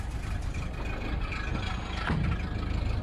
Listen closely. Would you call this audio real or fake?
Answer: real